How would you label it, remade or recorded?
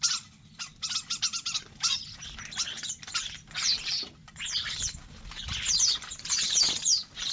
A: recorded